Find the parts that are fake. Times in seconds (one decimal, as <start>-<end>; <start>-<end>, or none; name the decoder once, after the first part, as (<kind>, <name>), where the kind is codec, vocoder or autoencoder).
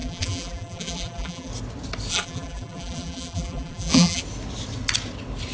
0.0-1.5 (vocoder, BigVGAN v2); 2.1-4.2